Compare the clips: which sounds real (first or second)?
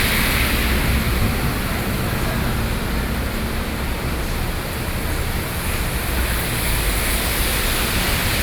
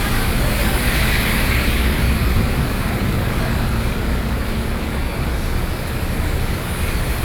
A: first